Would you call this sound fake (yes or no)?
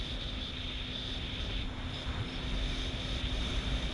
no